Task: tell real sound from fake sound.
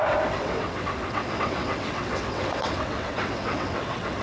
fake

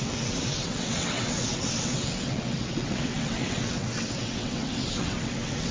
fake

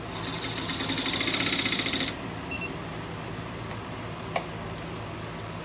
real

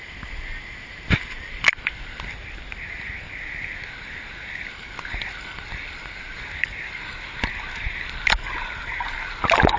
real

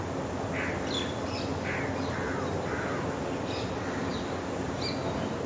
real